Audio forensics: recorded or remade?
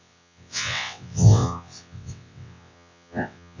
remade